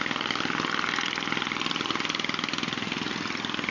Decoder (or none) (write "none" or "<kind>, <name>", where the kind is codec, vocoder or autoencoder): none